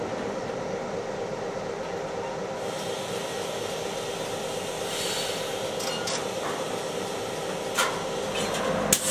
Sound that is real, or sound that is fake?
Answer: real